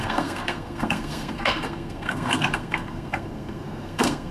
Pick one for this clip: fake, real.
fake